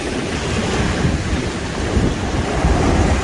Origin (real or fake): real